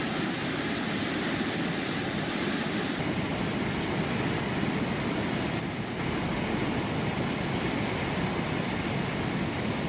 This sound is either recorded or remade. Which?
recorded